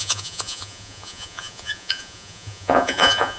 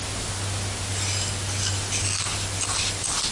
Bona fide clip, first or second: second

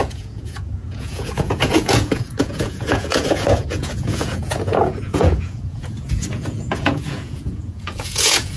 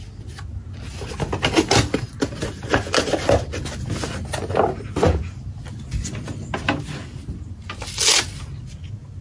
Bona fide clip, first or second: second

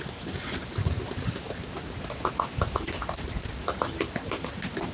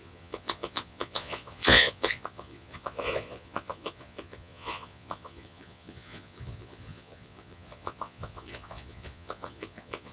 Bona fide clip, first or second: first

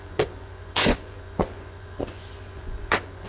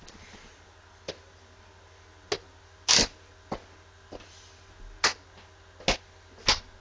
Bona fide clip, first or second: second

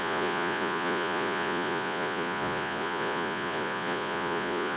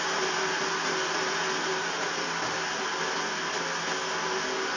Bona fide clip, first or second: second